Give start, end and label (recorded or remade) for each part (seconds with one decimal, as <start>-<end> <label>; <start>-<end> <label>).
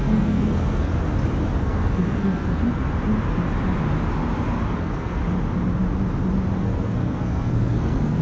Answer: 0.0-0.9 remade; 0.9-1.6 recorded; 1.6-2.8 remade; 2.8-4.8 recorded; 4.8-5.2 remade; 5.2-6.6 recorded; 6.6-8.2 remade